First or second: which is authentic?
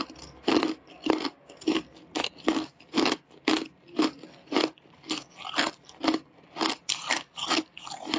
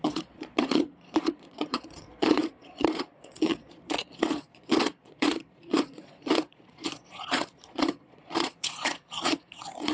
first